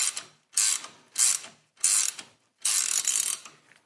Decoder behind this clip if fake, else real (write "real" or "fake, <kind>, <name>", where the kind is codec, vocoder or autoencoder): real